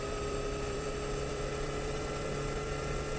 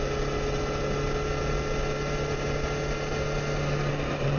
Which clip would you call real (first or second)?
second